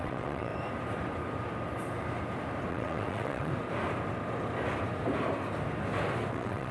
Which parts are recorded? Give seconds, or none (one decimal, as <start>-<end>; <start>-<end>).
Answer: 0.5-2.7; 3.5-6.3